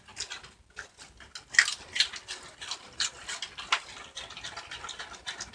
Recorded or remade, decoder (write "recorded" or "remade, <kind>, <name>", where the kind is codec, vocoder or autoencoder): recorded